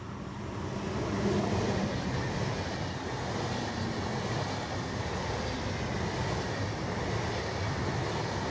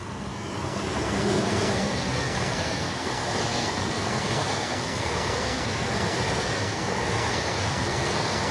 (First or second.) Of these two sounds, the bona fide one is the first